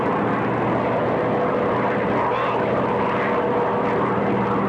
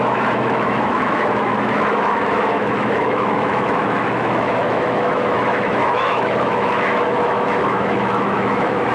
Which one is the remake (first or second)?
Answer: second